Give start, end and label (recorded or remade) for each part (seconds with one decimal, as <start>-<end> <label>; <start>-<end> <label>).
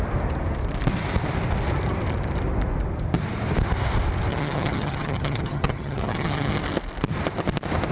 0.0-4.3 recorded; 4.3-6.6 remade; 6.6-7.9 recorded